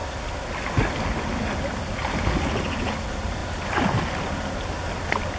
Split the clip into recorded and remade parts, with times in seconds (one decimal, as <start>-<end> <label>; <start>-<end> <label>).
0.0-5.4 recorded